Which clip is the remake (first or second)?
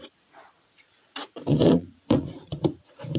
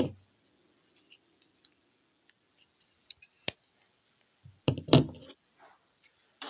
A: first